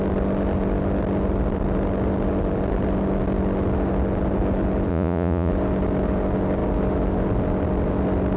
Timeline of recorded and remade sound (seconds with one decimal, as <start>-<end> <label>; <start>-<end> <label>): 0.0-4.9 recorded; 4.9-5.5 remade; 5.5-8.4 recorded